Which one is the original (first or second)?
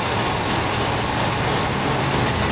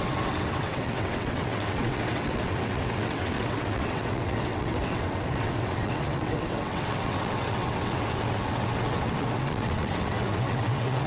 first